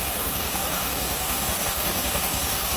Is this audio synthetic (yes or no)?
yes